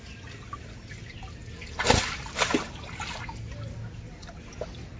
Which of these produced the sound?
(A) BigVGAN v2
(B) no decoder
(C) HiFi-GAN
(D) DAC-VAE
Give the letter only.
B